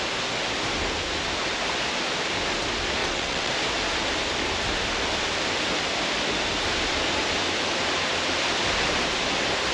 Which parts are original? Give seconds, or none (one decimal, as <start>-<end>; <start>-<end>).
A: 0.0-3.0; 3.5-9.7